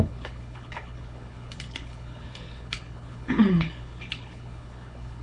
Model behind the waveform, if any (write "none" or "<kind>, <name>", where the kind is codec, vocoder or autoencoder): codec, HILCodec